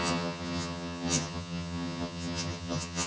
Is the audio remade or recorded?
remade